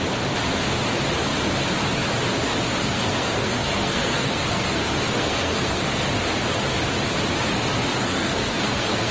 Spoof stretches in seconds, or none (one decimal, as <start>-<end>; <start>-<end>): 2.8-6.0; 7.9-9.1